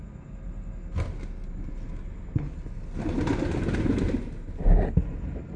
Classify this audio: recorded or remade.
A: recorded